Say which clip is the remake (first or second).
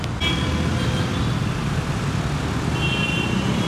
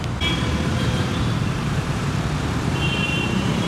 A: second